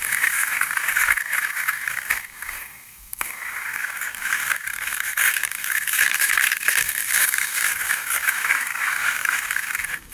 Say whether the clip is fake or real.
fake